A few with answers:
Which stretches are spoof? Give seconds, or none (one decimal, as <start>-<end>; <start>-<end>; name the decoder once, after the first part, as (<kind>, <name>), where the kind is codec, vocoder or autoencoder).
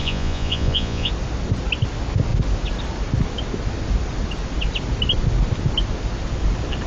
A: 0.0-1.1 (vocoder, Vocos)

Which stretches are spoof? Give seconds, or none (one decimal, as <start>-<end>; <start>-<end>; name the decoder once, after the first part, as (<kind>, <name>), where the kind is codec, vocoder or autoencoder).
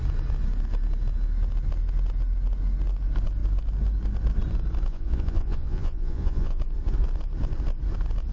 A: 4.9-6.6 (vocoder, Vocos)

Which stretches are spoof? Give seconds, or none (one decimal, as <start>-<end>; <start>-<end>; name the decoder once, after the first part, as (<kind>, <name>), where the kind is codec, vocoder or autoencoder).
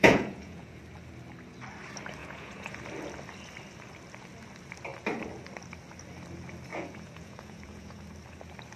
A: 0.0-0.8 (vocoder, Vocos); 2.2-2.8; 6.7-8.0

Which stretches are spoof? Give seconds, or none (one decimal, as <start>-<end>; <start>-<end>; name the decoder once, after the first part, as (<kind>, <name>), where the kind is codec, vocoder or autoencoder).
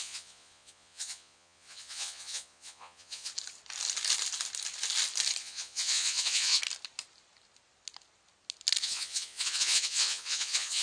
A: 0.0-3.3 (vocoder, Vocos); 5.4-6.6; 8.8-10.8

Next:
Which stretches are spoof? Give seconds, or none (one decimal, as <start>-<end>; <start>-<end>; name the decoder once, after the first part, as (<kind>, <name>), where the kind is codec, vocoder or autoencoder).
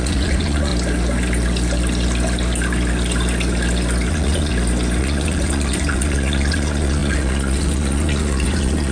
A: 0.0-0.7 (vocoder, Vocos); 4.1-4.5; 5.0-8.9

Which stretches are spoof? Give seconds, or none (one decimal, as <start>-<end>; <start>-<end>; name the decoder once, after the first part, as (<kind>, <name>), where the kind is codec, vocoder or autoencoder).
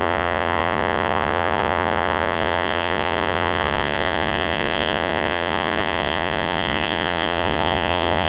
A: 0.0-8.3 (vocoder, Vocos)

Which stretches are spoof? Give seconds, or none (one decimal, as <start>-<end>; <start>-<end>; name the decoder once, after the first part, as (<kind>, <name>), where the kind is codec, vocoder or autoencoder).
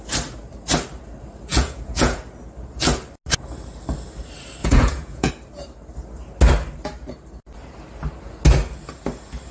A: 1.5-2.2 (vocoder, Vocos); 4.6-5.3